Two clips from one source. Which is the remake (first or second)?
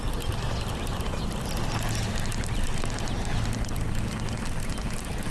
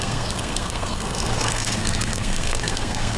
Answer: second